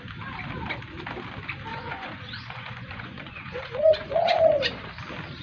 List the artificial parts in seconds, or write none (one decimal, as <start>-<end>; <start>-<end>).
1.7-4.9